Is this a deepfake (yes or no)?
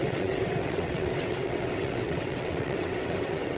yes